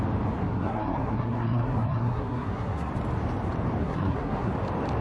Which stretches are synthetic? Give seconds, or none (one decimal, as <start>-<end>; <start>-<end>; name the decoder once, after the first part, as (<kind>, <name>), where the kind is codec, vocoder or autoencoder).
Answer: 0.4-2.9 (codec, SNAC); 3.8-4.5